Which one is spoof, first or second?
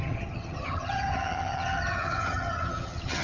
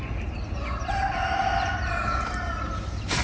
first